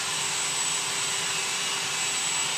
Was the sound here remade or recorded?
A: remade